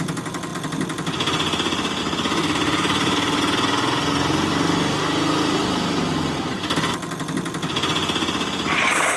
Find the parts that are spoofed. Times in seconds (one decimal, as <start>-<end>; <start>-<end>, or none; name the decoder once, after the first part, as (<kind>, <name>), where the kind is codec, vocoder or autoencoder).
0.5-2.0 (vocoder, BigVGAN v2); 2.4-3.4